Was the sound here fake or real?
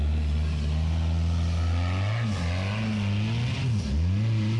real